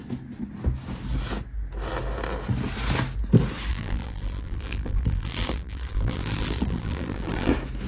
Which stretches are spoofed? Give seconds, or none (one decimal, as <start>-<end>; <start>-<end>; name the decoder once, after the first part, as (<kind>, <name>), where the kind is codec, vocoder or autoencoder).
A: 3.7-7.5 (vocoder, BigVGAN v2)